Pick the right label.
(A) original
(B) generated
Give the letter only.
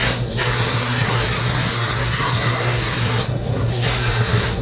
B